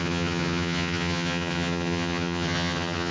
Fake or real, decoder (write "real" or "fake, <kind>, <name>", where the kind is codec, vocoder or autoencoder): fake, vocoder, HiFi-GAN